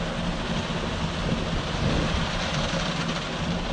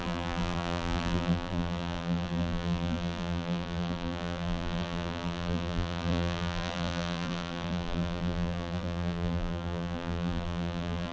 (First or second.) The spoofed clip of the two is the second